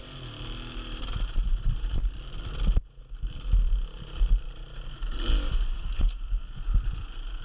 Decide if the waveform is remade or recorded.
recorded